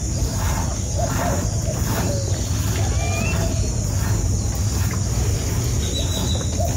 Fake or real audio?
real